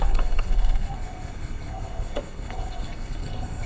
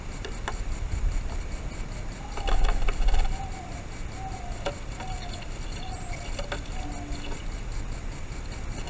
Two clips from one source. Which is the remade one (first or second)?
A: first